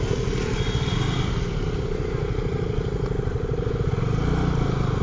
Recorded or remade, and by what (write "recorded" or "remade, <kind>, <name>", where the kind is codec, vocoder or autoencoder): recorded